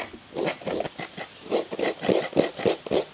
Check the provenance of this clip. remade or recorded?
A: recorded